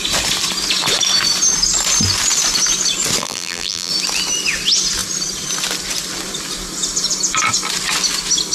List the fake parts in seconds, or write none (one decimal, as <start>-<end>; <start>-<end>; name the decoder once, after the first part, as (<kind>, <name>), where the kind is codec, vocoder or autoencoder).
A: 3.2-3.9 (vocoder, BigVGAN v2)